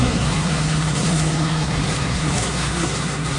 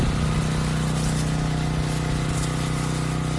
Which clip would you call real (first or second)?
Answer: second